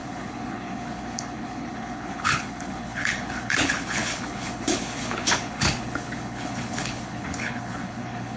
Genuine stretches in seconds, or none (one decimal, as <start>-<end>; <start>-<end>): none